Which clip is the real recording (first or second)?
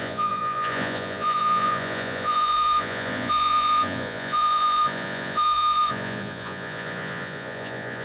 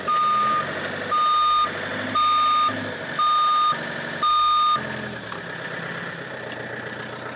second